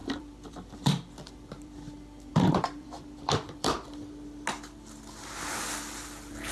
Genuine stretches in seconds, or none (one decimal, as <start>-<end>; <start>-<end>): 1.9-2.3; 4.1-6.5